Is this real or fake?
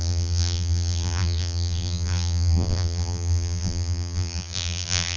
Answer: fake